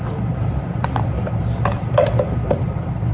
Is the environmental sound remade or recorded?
remade